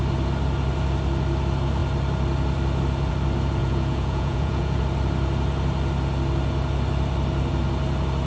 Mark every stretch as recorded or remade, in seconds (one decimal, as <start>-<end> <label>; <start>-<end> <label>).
0.0-3.6 recorded; 3.6-4.8 remade; 4.8-8.3 recorded